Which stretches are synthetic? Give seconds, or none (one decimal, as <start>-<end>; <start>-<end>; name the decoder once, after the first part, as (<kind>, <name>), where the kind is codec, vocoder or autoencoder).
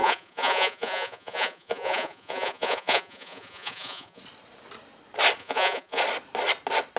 0.0-4.2 (vocoder, Vocos); 5.4-6.0